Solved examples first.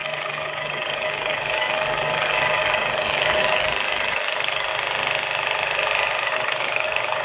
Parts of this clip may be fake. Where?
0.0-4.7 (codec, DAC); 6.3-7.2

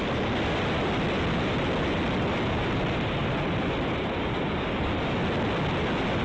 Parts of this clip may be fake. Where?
4.2-4.9 (codec, DAC)

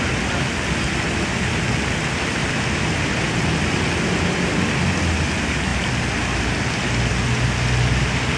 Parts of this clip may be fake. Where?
none

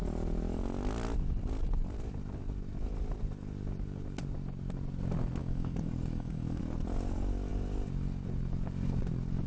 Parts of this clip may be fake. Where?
5.4-6.6 (codec, DAC)

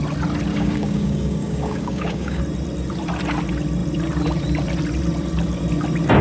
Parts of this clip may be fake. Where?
0.5-2.4 (codec, DAC)